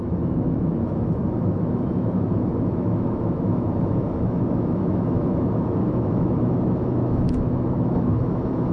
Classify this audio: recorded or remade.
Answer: remade